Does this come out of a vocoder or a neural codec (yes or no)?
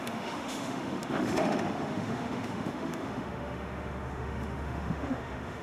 yes